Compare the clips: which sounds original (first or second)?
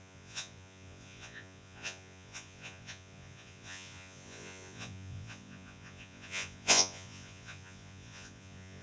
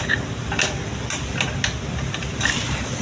second